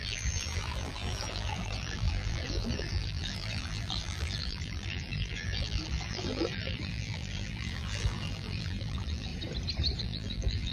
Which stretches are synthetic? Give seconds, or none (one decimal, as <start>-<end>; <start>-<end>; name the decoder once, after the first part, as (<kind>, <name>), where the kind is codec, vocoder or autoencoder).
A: 0.0-9.3 (vocoder, BigVGAN v2); 10.0-10.7